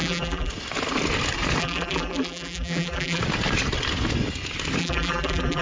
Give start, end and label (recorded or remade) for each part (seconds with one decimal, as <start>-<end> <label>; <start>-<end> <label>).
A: 0.0-0.5 remade; 0.5-1.6 recorded; 1.6-3.2 remade; 3.2-4.8 recorded; 4.8-5.6 remade